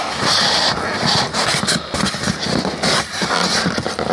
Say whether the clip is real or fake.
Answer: real